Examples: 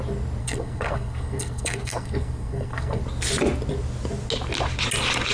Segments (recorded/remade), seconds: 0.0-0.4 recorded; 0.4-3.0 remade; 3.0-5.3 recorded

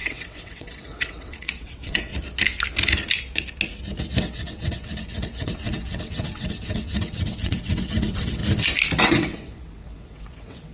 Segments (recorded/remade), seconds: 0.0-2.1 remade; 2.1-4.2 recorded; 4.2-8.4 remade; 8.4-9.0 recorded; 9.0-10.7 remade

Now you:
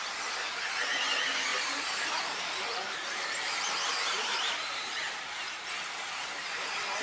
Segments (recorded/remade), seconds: 0.0-1.5 recorded; 1.5-5.7 remade; 5.7-7.0 recorded